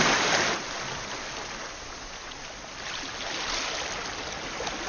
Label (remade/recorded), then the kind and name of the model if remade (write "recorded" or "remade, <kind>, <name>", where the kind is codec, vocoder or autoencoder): recorded